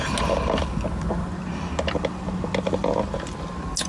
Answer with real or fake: real